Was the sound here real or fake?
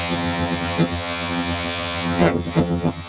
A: fake